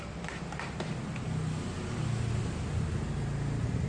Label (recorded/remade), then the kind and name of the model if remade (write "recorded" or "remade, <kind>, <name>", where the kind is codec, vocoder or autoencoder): recorded